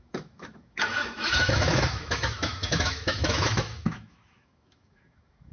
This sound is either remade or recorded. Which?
remade